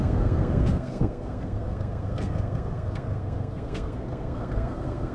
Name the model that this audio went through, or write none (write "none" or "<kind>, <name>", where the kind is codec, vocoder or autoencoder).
codec, SNAC